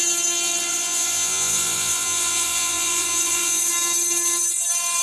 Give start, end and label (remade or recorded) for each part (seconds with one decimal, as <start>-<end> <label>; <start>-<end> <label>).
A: 0.0-0.7 recorded; 0.7-3.7 remade; 3.7-5.0 recorded

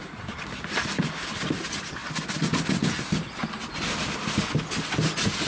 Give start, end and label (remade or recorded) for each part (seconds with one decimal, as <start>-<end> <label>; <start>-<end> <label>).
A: 0.0-5.5 recorded